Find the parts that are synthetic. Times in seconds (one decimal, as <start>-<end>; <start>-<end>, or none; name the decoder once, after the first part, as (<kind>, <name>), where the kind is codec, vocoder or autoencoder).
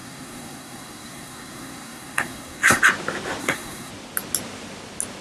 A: 0.0-2.8 (codec, SNAC); 3.4-3.9